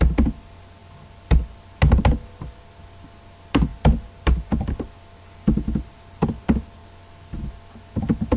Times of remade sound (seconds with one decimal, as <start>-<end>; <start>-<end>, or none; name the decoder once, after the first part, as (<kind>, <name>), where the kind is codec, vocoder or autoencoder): none